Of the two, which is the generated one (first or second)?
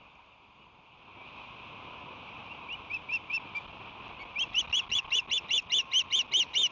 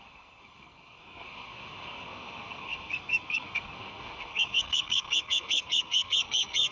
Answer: second